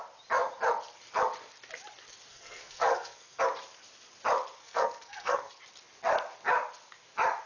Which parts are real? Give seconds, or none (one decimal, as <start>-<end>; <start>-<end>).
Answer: 0.0-2.3; 3.4-4.6; 5.5-7.5